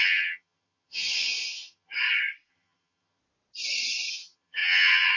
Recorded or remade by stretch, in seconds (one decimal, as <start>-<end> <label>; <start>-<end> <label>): 0.0-1.9 remade; 1.9-2.5 recorded; 2.5-3.2 remade; 3.2-4.1 recorded; 4.1-5.2 remade